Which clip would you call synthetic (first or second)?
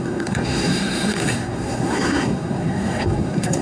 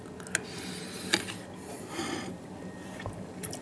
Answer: first